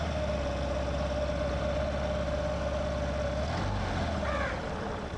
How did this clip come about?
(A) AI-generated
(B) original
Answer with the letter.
B